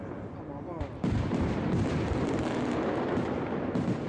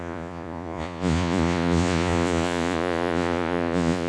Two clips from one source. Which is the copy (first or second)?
second